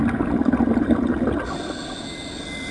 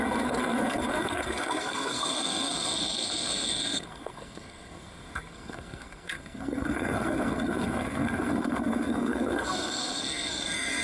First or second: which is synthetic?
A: second